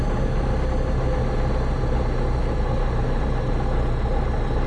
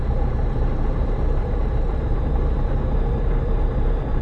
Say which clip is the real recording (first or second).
first